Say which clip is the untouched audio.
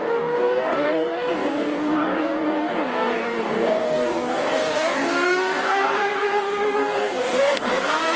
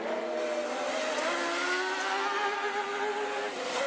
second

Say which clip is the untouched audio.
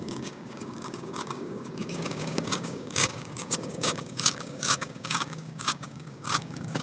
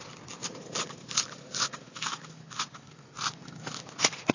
second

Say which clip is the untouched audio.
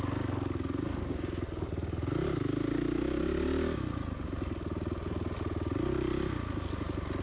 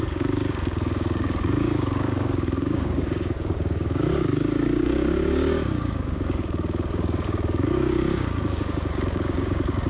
first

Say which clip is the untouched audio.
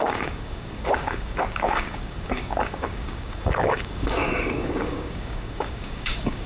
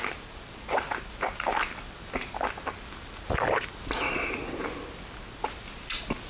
second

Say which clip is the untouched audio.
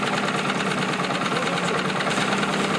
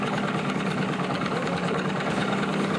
first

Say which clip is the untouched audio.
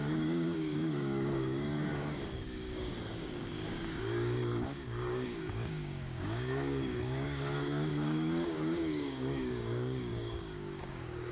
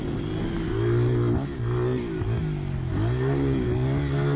second